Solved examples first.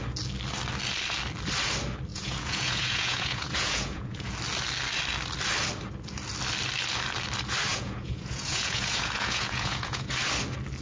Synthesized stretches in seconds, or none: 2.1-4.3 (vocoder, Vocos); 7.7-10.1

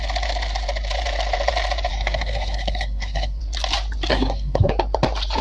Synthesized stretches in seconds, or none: 1.9-3.4 (codec, SNAC); 4.1-4.7

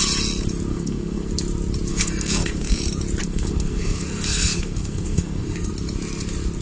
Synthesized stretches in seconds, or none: 0.7-1.3 (codec, SNAC); 1.9-2.8; 3.2-5.7

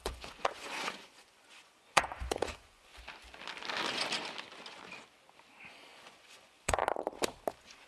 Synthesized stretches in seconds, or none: 0.0-2.9 (vocoder, Vocos); 5.7-6.8; 7.5-7.9

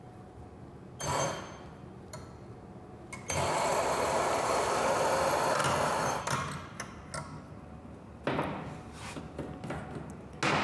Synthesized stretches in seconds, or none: none